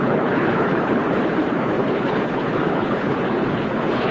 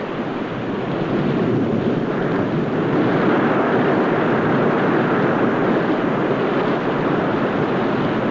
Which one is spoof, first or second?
first